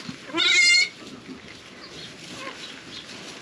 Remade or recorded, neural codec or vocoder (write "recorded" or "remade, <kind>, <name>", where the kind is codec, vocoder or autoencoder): recorded